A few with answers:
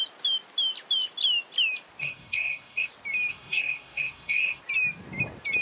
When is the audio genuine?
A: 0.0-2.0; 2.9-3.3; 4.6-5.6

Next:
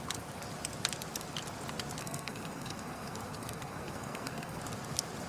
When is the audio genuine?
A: 0.0-2.0; 4.6-5.3

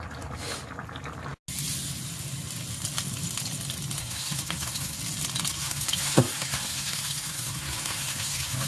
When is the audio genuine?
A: 0.0-4.0; 5.0-5.5

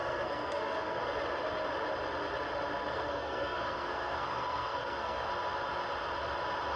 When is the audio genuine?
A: 1.0-2.9; 5.3-6.8

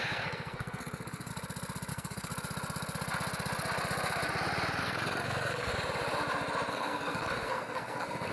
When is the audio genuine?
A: 1.3-1.9; 2.3-4.8; 5.7-6.7